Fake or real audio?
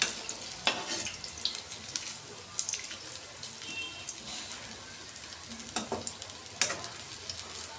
real